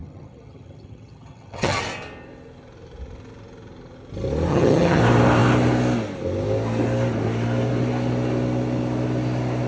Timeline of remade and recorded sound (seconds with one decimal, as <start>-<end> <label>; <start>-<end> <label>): 0.0-1.8 remade; 1.8-4.5 recorded; 4.5-5.0 remade; 5.0-9.7 recorded